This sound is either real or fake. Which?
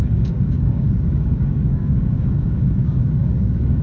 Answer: fake